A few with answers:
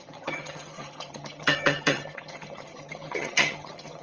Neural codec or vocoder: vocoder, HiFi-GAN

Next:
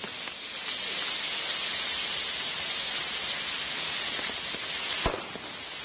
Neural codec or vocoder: none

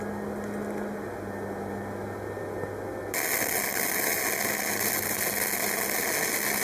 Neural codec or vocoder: none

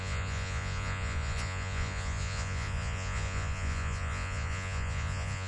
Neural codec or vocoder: vocoder, Vocos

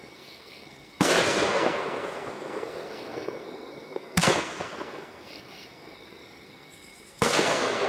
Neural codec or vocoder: codec, SNAC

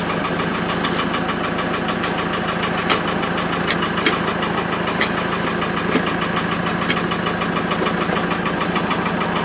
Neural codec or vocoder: none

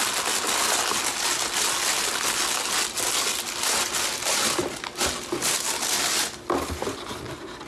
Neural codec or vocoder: none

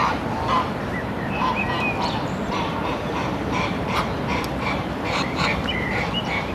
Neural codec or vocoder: vocoder, BigVGAN v2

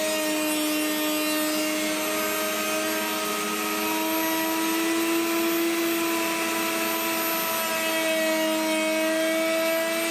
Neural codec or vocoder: none